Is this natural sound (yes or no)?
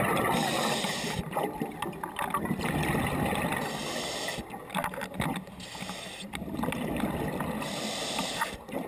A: yes